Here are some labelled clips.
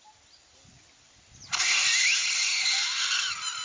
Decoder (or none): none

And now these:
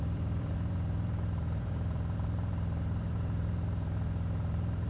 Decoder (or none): vocoder, BigVGAN v2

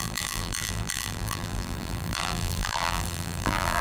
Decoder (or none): vocoder, BigVGAN v2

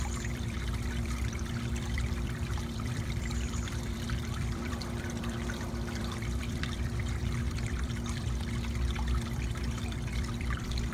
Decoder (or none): vocoder, BigVGAN v2